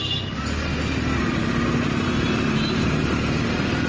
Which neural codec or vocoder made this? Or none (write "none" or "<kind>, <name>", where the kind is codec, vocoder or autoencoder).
none